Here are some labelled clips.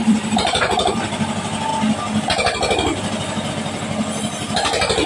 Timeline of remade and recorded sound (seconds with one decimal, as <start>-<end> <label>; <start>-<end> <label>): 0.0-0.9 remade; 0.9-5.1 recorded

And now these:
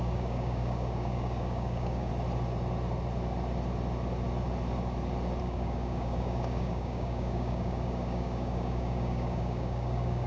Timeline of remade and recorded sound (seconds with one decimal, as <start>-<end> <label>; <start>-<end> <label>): 0.0-2.1 remade; 2.1-5.4 recorded; 5.4-10.3 remade

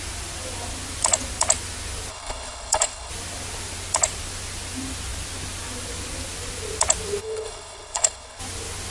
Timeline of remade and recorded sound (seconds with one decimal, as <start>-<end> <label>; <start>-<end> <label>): 0.0-2.1 recorded; 2.1-3.1 remade; 3.1-7.2 recorded; 7.2-8.4 remade; 8.4-8.9 recorded

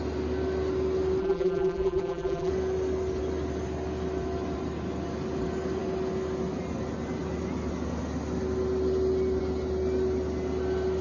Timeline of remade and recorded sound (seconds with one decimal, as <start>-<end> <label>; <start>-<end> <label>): 0.0-1.2 recorded; 1.2-2.5 remade; 2.5-11.0 recorded

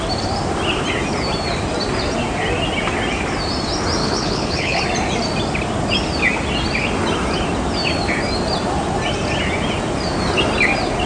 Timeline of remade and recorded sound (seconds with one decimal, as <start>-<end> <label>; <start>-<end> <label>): 0.0-4.0 recorded; 4.0-4.8 remade; 4.8-11.1 recorded

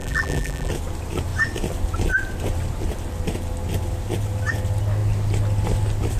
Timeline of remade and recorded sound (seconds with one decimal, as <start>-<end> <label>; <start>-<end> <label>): 0.0-0.7 remade; 0.7-6.2 recorded

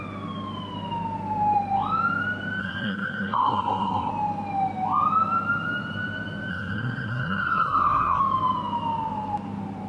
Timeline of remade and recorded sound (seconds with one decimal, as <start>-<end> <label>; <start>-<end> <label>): 0.0-2.6 recorded; 2.6-4.1 remade; 4.1-6.5 recorded; 6.5-8.2 remade; 8.2-9.9 recorded

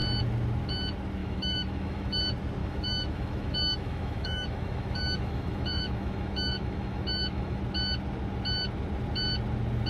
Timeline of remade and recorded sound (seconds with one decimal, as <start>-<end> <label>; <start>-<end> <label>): 0.0-1.2 recorded; 1.2-2.2 remade; 2.2-2.6 recorded; 2.6-7.6 remade; 7.6-9.9 recorded